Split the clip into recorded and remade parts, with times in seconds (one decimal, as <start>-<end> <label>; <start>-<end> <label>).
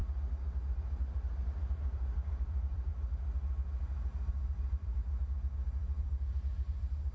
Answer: 0.0-0.6 recorded; 0.6-2.9 remade; 2.9-4.3 recorded; 4.3-5.0 remade; 5.0-5.7 recorded; 5.7-7.1 remade